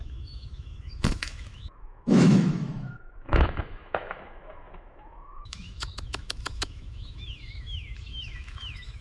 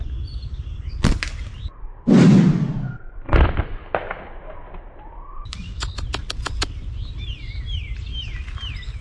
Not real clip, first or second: first